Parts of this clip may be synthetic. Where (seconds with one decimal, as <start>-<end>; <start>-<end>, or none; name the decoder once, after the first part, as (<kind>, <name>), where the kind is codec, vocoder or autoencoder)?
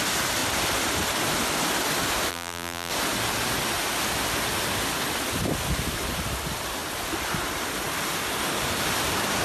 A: 2.3-2.9 (vocoder, BigVGAN v2)